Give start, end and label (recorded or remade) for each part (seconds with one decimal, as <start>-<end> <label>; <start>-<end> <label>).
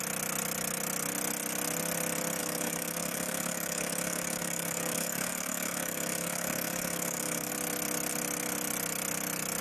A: 0.0-2.4 recorded; 2.4-7.5 remade; 7.5-9.6 recorded